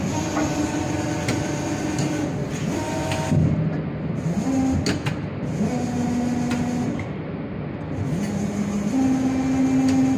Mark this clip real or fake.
real